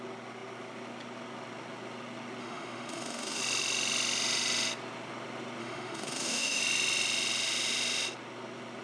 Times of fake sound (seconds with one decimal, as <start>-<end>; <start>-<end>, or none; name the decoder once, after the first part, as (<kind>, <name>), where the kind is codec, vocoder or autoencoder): 2.4-3.4 (autoencoder, DAC-VAE); 5.6-6.6